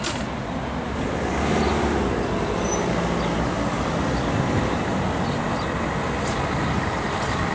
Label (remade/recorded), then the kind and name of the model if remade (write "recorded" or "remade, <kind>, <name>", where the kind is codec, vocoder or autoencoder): recorded